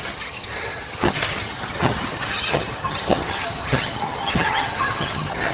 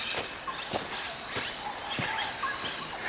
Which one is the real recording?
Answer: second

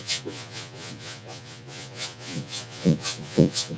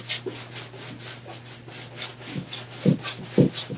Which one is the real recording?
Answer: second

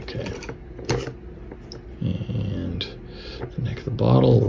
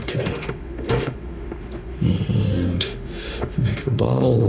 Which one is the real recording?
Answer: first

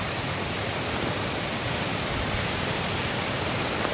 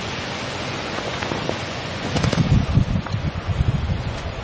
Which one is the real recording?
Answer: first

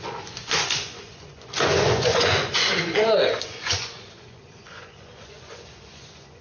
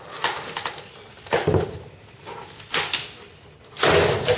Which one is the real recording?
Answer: second